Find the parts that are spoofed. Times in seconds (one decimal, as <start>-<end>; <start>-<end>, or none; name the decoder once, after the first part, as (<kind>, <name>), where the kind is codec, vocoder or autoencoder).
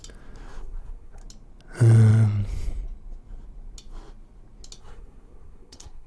0.6-1.2 (codec, SNAC); 4.8-6.1